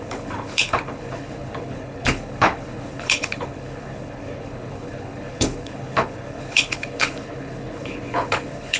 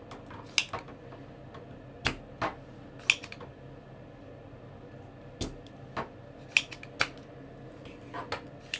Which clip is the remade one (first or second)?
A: first